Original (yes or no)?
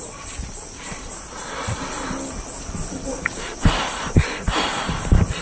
yes